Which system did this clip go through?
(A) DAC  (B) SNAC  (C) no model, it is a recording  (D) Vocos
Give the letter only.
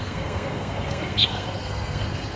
B